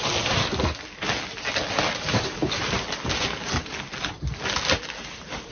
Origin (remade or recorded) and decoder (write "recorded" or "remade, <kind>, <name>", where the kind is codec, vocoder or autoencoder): recorded